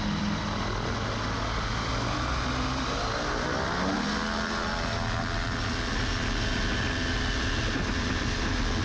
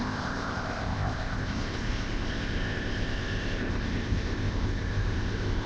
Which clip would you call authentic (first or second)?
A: first